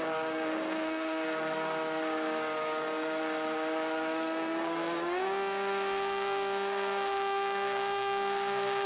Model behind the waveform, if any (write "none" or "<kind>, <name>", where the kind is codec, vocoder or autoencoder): codec, SNAC